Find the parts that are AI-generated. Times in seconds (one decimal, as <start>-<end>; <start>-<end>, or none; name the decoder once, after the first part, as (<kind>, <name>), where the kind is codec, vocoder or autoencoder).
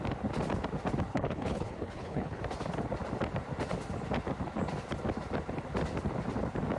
1.1-2.4 (codec, HILCodec)